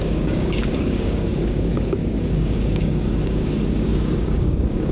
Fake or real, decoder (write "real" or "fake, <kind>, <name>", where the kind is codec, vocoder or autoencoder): fake, codec, DAC